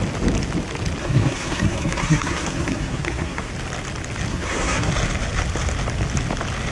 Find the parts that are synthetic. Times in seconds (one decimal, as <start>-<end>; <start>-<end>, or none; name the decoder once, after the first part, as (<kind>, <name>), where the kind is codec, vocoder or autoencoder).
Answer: 1.0-3.5 (codec, SNAC); 4.3-4.9